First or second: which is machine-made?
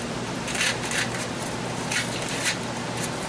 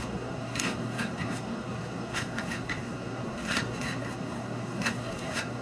second